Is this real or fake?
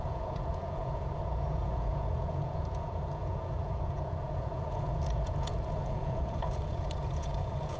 fake